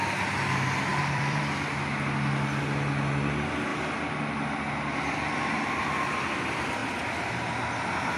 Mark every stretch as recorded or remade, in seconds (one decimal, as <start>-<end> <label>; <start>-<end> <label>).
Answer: 0.0-0.9 recorded; 0.9-1.4 remade; 1.4-8.2 recorded